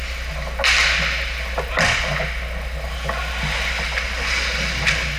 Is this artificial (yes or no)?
no